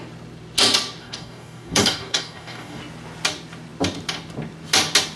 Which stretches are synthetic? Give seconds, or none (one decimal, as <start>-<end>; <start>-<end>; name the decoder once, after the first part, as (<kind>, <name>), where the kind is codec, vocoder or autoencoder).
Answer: 1.0-2.8 (codec, DAC)